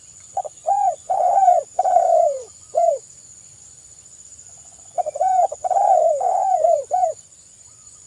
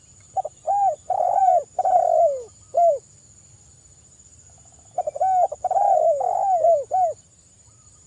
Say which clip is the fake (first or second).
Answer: first